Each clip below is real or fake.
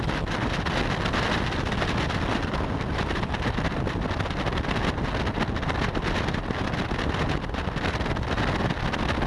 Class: fake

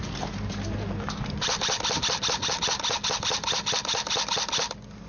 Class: real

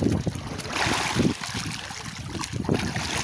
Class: real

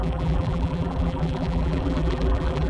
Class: fake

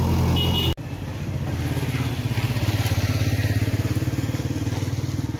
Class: real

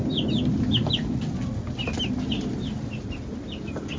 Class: real